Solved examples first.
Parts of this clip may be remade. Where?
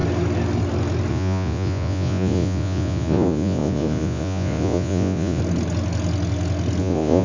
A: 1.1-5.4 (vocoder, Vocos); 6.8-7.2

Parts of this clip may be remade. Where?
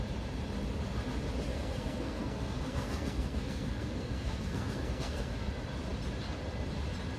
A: 1.5-5.5 (codec, SNAC)